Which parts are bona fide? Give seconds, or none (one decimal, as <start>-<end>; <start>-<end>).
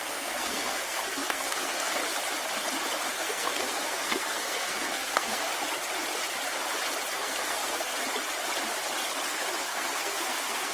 2.0-3.1; 5.5-7.1; 7.9-9.6